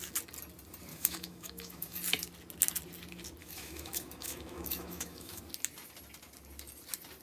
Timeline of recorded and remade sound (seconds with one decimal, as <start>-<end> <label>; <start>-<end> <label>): 0.0-0.9 recorded; 0.9-2.0 remade; 2.0-3.4 recorded; 3.4-5.4 remade; 5.4-7.2 recorded